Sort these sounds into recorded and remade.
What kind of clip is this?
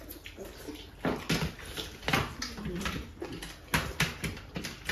recorded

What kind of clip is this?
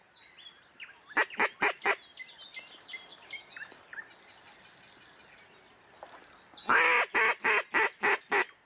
recorded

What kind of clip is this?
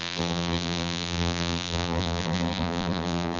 remade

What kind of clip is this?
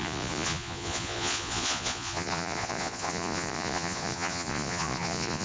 remade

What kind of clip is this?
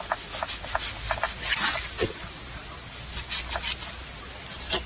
recorded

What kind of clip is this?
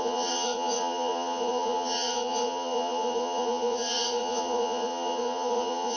remade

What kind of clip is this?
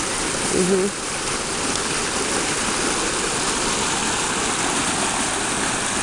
recorded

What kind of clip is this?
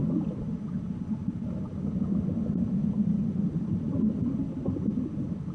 recorded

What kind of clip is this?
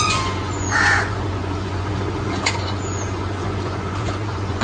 remade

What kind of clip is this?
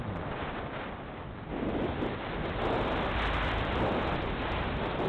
recorded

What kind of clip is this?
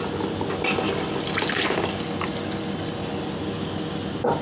recorded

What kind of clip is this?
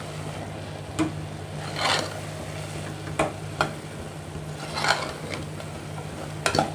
recorded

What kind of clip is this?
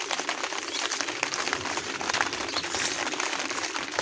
recorded